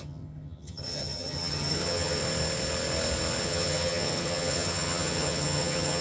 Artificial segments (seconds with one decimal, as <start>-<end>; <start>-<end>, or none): 0.0-2.2; 3.4-6.0